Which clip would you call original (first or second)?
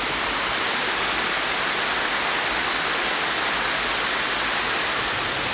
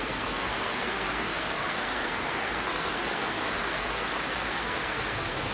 first